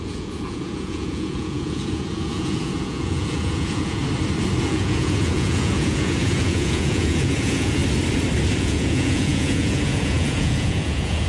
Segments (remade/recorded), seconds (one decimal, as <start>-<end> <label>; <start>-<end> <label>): 0.0-4.0 remade; 4.0-4.6 recorded; 4.6-7.8 remade; 7.8-8.6 recorded; 8.6-11.3 remade